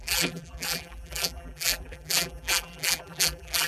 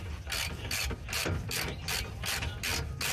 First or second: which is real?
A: second